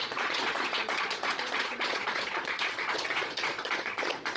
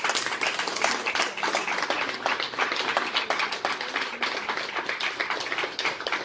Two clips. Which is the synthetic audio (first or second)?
first